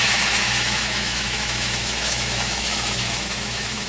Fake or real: fake